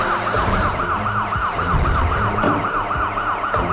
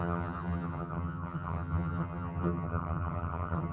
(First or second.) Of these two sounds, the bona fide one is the first